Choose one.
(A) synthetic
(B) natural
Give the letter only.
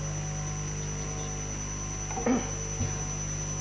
B